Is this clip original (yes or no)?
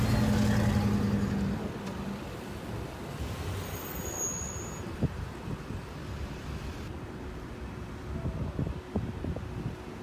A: yes